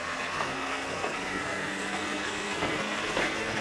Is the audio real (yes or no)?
no